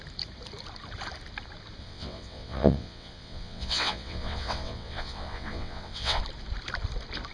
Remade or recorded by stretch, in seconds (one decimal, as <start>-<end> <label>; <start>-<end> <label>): 0.0-1.8 recorded; 1.8-6.2 remade; 6.2-7.3 recorded